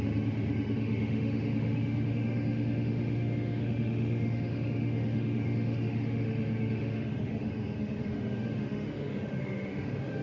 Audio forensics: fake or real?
fake